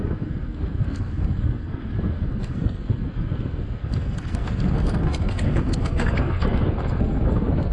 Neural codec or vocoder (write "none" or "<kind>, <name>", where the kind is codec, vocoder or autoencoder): codec, SNAC